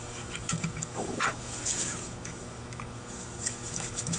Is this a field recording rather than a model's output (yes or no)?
no